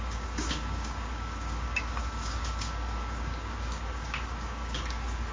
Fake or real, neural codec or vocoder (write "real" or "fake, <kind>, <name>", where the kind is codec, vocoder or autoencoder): fake, codec, DAC